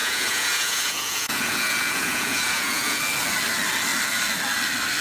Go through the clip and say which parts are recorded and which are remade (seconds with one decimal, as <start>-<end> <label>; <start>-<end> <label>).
0.0-3.0 remade; 3.0-5.0 recorded